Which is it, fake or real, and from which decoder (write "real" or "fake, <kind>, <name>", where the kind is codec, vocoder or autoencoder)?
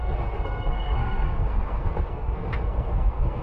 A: fake, codec, SNAC